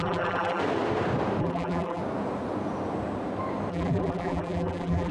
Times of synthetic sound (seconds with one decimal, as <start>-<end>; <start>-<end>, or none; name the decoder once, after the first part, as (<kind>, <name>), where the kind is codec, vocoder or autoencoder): 0.0-0.6 (vocoder, BigVGAN v2); 1.4-2.0; 3.7-5.1